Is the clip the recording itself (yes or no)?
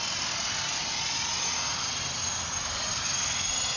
yes